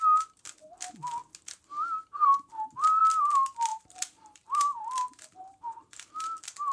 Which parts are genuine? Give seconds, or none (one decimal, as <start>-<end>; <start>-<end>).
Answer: 0.0-3.7; 6.1-6.7